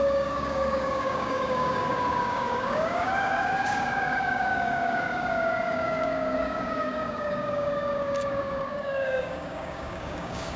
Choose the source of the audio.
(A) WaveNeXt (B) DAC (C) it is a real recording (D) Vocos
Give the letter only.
B